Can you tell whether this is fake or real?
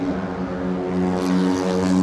real